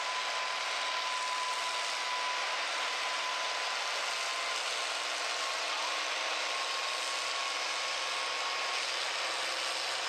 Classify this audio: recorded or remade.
recorded